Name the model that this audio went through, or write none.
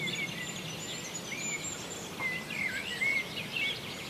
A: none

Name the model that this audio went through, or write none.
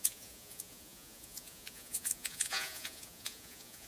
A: vocoder, Vocos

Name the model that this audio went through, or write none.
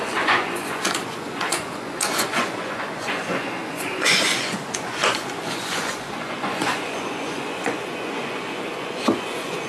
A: vocoder, Vocos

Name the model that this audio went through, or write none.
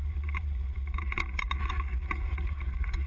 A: vocoder, Vocos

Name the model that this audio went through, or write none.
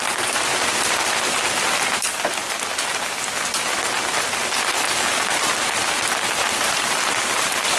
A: none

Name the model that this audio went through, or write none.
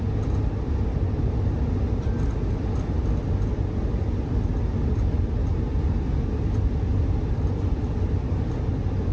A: none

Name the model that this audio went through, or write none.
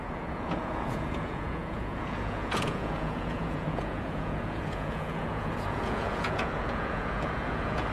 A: vocoder, Vocos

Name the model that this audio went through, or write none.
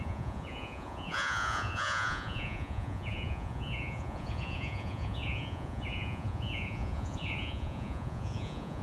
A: vocoder, Vocos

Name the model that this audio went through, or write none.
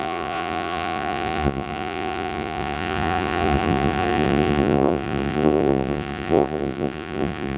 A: vocoder, Vocos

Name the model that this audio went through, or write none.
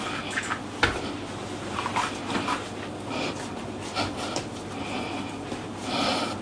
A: none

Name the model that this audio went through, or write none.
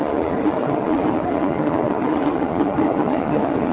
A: vocoder, Vocos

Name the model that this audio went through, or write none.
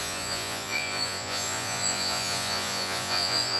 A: vocoder, Vocos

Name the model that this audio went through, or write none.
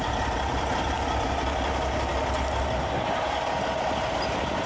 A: none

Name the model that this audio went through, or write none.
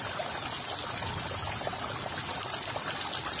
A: none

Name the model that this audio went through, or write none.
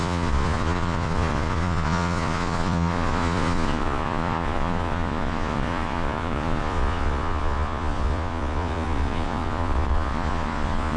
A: vocoder, Vocos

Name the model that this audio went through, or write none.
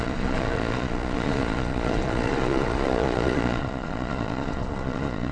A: vocoder, Vocos